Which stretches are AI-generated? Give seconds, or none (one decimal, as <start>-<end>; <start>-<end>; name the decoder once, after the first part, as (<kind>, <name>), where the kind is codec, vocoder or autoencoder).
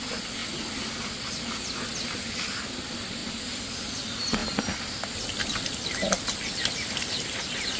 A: 3.2-3.9 (vocoder, BigVGAN v2); 4.4-4.9